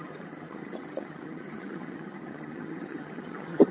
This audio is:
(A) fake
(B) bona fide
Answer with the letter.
A